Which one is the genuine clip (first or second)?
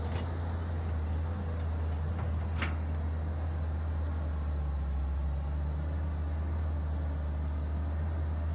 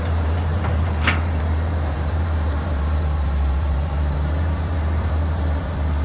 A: first